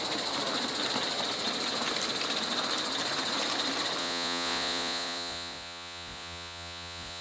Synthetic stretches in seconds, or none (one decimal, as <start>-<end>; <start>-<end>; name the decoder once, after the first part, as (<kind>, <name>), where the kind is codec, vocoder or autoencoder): 4.0-7.2 (vocoder, Vocos)